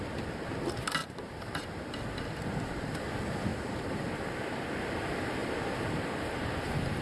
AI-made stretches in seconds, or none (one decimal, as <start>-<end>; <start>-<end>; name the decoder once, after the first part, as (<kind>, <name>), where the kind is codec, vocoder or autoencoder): 1.0-2.0 (vocoder, BigVGAN v2); 3.5-4.1; 5.4-7.0